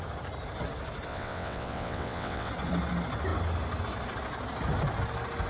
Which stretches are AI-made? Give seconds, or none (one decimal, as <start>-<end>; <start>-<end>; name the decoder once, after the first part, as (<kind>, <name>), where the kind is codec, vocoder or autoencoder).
1.1-2.5 (vocoder, WaveNeXt)